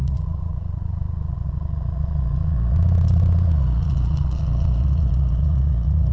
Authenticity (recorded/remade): remade